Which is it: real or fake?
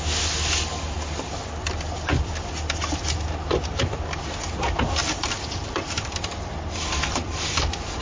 real